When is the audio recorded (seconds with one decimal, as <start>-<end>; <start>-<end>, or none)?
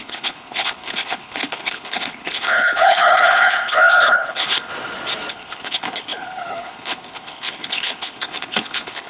4.7-5.3